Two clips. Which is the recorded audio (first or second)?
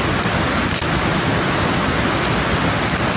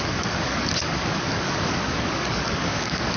first